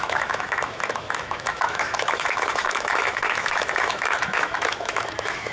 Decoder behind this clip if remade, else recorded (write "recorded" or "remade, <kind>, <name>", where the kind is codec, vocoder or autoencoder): remade, autoencoder, DAC-VAE